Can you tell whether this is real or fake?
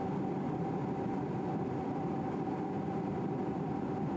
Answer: fake